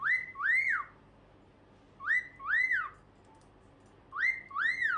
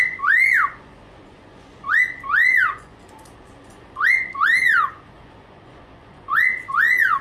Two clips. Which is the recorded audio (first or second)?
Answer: first